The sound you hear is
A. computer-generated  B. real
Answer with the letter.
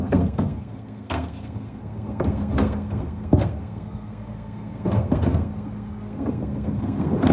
A